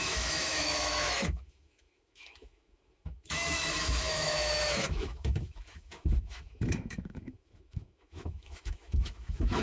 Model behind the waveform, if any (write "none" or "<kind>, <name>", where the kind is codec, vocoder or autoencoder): autoencoder, DAC-VAE